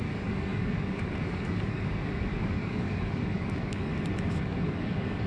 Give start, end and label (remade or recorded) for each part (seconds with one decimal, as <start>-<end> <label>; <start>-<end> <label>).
0.0-3.9 remade; 3.9-4.4 recorded; 4.4-5.3 remade